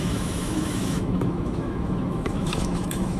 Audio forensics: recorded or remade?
remade